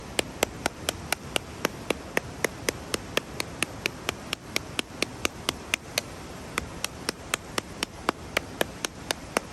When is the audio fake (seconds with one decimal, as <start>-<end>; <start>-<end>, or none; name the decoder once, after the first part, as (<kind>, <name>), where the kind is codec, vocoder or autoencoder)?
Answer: 5.1-9.5 (vocoder, BigVGAN v2)